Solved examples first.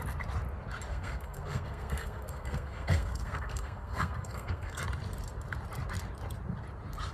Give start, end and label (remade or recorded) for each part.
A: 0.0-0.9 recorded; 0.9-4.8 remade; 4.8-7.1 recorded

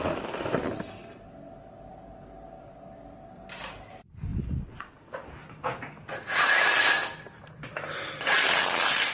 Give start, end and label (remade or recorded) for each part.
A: 0.0-9.1 recorded